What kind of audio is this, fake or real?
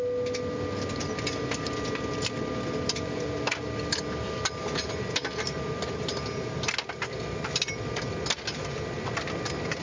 real